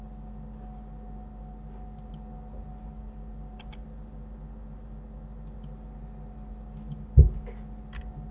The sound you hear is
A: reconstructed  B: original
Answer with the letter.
B